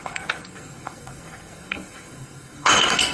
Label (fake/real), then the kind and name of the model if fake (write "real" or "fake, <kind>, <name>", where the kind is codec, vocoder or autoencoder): fake, codec, SNAC